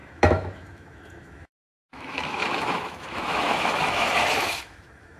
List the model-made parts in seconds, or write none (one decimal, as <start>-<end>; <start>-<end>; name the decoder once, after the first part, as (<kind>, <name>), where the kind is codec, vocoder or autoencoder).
0.0-5.2 (autoencoder, DAC-VAE)